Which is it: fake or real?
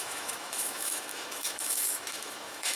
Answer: fake